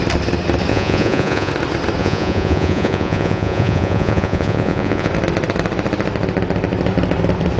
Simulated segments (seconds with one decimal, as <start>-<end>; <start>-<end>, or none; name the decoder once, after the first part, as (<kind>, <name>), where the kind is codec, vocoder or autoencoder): 0.7-1.5 (vocoder, Vocos); 2.0-5.1